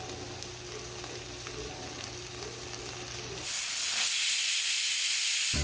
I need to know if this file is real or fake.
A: real